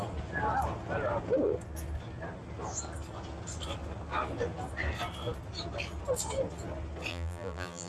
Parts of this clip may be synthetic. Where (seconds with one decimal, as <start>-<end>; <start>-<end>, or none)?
7.1-7.9